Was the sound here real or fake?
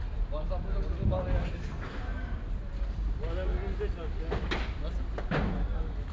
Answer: real